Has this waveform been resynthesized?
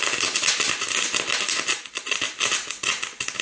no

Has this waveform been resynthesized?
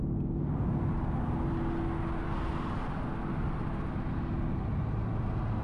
no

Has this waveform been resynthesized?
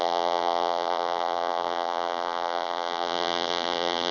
yes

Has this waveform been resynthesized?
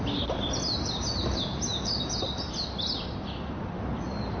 no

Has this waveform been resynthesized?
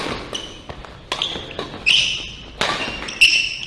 no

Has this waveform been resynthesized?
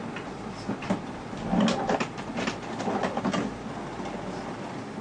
no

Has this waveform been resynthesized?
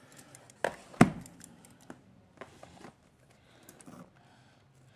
no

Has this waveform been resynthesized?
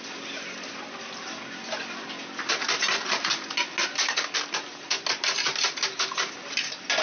no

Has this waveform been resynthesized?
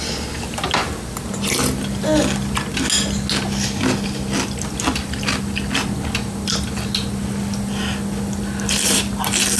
no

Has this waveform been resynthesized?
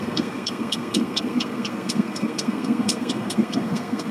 yes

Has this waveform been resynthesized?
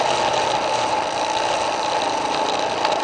no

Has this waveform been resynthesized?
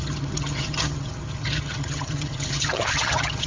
yes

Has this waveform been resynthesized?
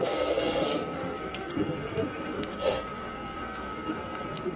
yes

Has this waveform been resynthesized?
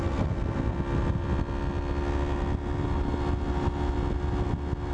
no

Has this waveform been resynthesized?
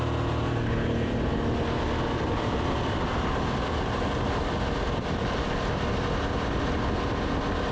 no